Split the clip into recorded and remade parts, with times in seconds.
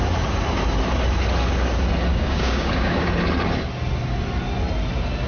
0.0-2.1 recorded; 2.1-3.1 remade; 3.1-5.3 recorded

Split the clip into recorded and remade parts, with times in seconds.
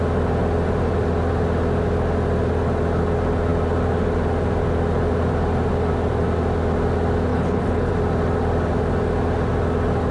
0.0-7.3 recorded; 7.3-7.9 remade; 7.9-10.1 recorded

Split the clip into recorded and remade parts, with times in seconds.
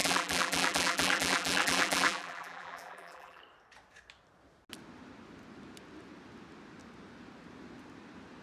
0.0-3.4 remade; 3.4-8.4 recorded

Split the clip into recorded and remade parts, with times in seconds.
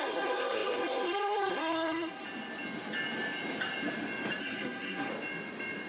0.0-2.2 remade; 2.2-4.4 recorded; 4.4-5.1 remade; 5.1-5.9 recorded